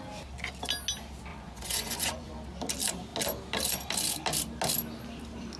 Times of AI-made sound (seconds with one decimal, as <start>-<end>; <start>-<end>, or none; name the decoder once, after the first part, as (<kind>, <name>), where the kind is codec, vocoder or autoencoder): 1.3-2.3 (vocoder, Vocos)